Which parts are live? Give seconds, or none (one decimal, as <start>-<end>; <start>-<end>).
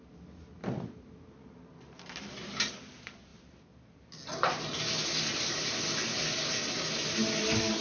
0.0-7.8